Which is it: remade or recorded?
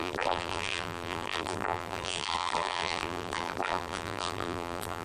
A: remade